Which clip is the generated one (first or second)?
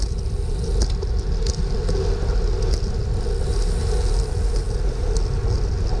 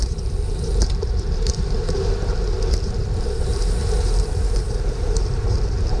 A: second